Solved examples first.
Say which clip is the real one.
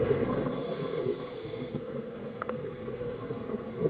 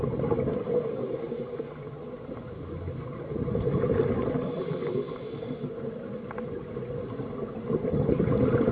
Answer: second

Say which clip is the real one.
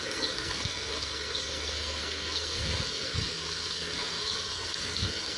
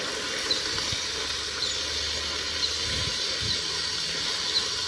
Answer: second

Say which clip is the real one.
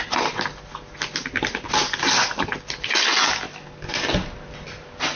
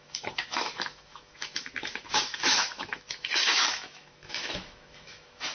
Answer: first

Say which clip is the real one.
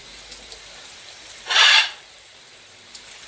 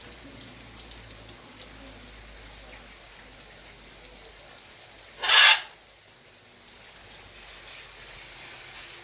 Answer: second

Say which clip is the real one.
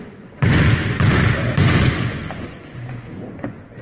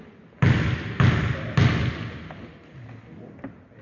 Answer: second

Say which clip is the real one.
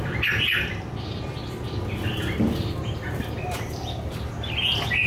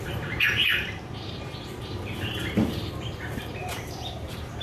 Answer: first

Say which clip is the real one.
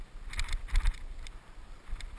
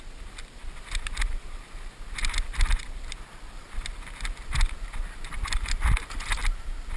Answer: second